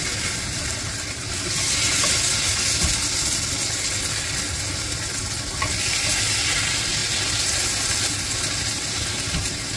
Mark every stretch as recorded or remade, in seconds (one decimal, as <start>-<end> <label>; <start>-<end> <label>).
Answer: 0.0-9.8 recorded